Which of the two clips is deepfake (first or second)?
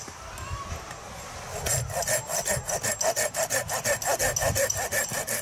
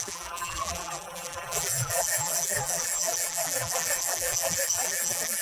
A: second